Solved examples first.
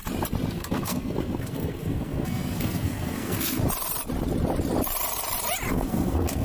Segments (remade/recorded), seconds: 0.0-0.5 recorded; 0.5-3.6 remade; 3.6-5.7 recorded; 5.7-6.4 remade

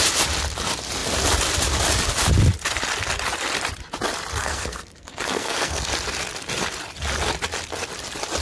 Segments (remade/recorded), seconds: 0.0-4.4 recorded; 4.4-5.9 remade; 5.9-8.4 recorded

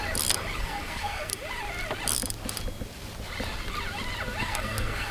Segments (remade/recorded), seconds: 0.0-0.6 recorded; 0.6-1.3 remade; 1.3-4.4 recorded; 4.4-5.1 remade

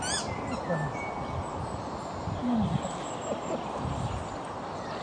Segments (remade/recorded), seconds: 0.0-5.0 recorded

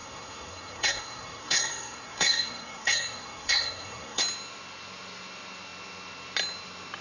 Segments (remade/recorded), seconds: 0.0-4.2 remade; 4.2-7.0 recorded